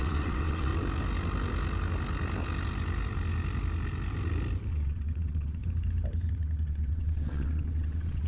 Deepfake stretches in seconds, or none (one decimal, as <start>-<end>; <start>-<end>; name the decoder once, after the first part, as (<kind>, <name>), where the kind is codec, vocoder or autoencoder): 0.0-0.7 (vocoder, WaveNeXt); 4.7-5.6; 6.3-8.3